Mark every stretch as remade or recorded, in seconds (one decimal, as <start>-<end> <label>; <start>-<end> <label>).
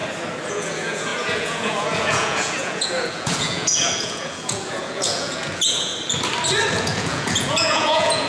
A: 0.0-0.5 recorded; 0.5-5.9 remade; 5.9-6.7 recorded; 6.7-8.3 remade